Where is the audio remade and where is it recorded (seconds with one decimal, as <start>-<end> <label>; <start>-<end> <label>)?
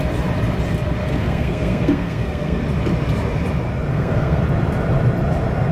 0.0-1.0 recorded; 1.0-2.6 remade; 2.6-3.9 recorded; 3.9-4.4 remade; 4.4-5.7 recorded